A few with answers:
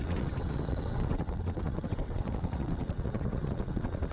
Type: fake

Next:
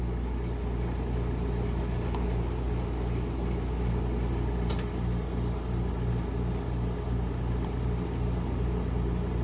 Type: real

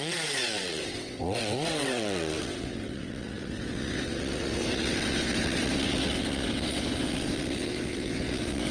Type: fake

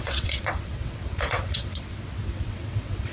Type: fake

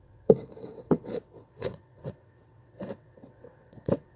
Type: fake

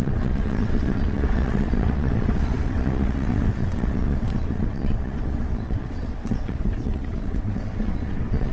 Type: fake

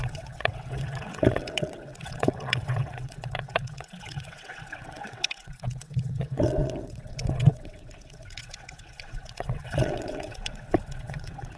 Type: fake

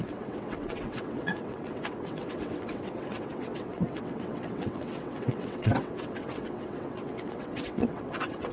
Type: fake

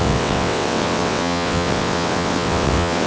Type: fake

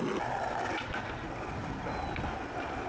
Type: real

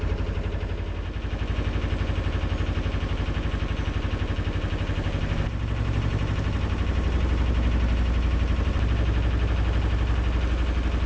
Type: real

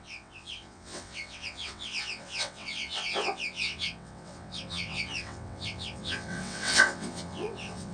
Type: fake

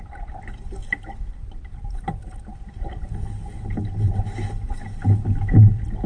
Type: real